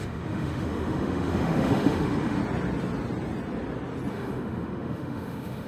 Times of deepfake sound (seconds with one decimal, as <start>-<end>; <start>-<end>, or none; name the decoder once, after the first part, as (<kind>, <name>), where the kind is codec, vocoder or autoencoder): 0.0-2.4 (autoencoder, DAC-VAE); 4.1-5.7